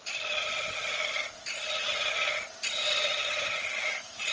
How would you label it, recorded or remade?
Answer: recorded